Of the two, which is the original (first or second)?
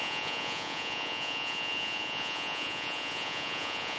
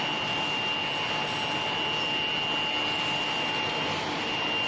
second